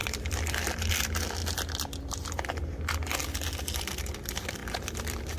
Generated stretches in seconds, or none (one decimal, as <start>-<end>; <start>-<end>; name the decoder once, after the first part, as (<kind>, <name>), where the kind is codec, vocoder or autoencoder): 0.0-0.9 (vocoder, BigVGAN v2); 4.6-5.4